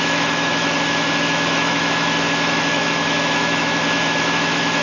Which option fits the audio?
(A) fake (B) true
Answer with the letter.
A